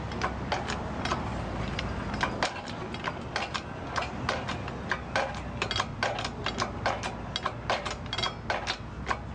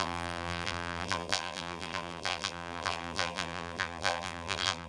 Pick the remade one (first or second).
second